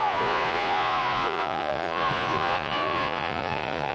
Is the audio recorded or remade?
remade